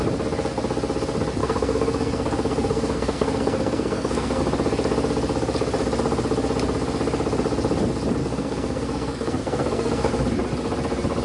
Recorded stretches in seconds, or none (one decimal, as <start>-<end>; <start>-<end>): 0.0-1.4; 4.4-8.2; 10.1-11.2